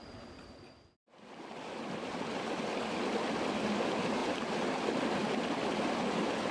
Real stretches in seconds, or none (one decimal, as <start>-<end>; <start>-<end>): 0.0-6.5